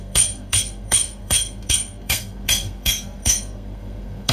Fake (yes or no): yes